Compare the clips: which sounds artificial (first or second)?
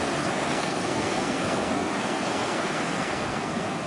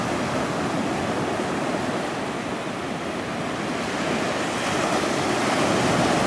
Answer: first